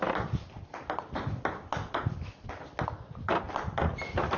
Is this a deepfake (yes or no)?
no